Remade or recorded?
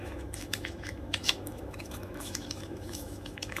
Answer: remade